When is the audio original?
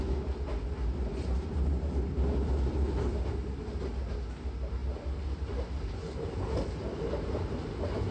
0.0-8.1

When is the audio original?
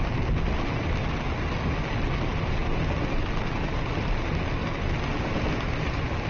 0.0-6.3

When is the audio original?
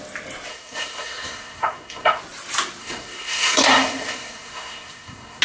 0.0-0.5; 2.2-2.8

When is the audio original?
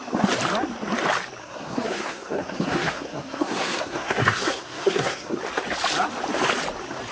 0.0-1.4; 5.4-7.1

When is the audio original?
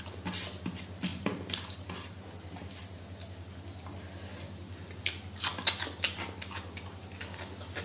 0.0-7.8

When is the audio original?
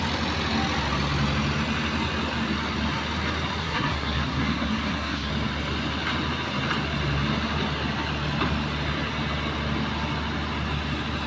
0.0-3.6; 5.3-11.3